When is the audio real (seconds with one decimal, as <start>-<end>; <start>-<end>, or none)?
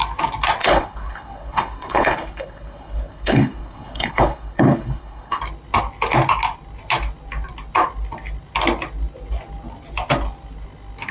0.0-0.6; 5.4-11.1